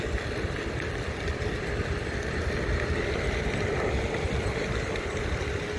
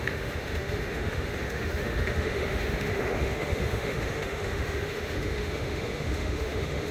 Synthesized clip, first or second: second